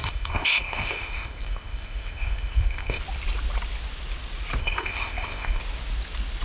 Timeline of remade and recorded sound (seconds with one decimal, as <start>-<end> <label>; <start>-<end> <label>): 0.0-3.0 remade; 3.0-4.6 recorded; 4.6-5.6 remade; 5.6-6.4 recorded